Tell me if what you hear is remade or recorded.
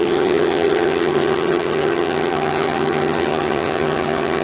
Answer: remade